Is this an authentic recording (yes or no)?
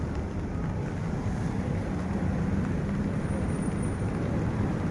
no